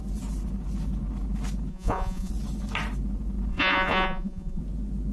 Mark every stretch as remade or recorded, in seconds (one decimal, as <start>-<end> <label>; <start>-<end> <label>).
0.0-1.7 recorded; 1.7-2.3 remade; 2.3-3.5 recorded; 3.5-4.6 remade; 4.6-5.1 recorded